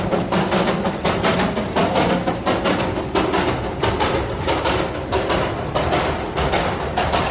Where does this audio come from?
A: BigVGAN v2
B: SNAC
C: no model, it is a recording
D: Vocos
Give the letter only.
C